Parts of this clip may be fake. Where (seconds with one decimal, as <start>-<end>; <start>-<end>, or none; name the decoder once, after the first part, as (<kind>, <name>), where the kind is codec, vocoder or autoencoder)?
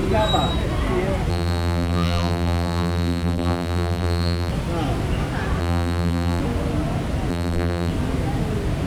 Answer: 1.3-4.5 (vocoder, BigVGAN v2); 5.6-6.4; 7.3-7.9